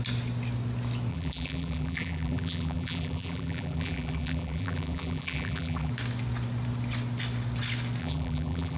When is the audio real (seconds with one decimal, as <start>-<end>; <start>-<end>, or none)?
0.0-1.1; 5.9-8.0